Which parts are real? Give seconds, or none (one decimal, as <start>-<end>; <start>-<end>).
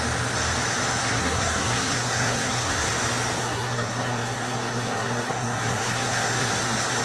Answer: 0.0-1.0; 2.9-3.4